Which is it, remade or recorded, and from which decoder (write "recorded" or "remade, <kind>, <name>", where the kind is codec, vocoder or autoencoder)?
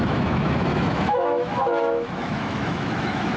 remade, autoencoder, DAC-VAE